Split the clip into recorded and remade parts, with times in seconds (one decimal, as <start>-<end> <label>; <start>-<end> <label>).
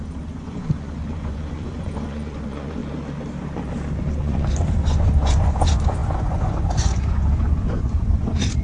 0.0-2.8 remade; 2.8-4.0 recorded; 4.0-8.6 remade